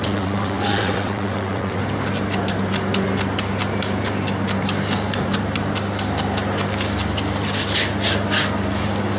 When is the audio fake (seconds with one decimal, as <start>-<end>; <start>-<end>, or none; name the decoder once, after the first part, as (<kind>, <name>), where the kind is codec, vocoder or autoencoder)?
0.0-1.8 (vocoder, WaveNeXt)